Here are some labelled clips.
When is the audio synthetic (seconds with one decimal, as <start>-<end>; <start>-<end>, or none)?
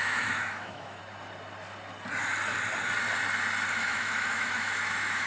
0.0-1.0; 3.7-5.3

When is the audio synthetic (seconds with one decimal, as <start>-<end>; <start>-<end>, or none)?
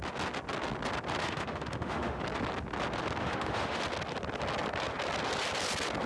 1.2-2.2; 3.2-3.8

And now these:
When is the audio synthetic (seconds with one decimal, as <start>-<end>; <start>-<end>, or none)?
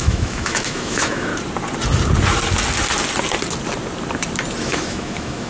0.0-1.3; 4.6-5.5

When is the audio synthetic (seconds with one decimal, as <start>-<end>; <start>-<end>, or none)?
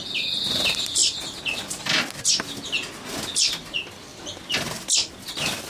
none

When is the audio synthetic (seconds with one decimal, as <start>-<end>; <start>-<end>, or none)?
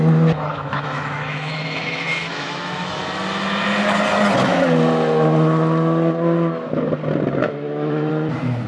0.5-3.0; 7.4-8.1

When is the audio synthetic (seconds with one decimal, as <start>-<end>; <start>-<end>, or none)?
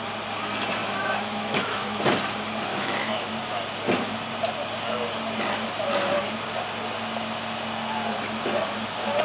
0.8-2.0; 2.7-3.3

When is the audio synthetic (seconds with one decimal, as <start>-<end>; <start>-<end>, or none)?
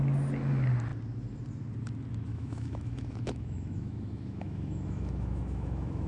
2.3-6.1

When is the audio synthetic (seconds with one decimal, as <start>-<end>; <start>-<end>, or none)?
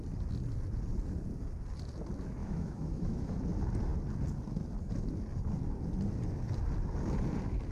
2.4-3.4